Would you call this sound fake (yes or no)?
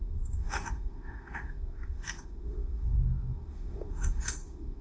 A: yes